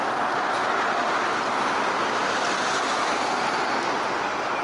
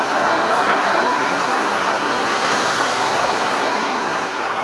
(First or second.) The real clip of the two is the first